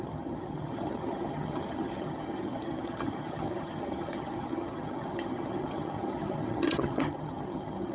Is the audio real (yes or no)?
no